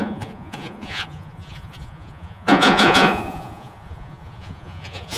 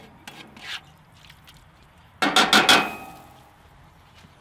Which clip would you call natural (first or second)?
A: second